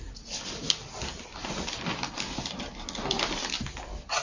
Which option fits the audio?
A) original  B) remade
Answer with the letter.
A